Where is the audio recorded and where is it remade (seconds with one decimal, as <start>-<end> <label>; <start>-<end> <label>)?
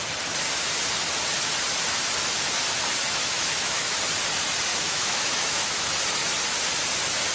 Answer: 0.0-3.2 recorded; 3.2-4.0 remade; 4.0-4.7 recorded; 4.7-5.9 remade; 5.9-7.3 recorded